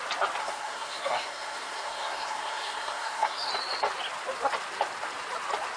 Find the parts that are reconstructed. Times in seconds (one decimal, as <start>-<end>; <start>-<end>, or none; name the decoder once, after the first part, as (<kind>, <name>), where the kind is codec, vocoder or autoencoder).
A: 0.4-3.5 (codec, SNAC)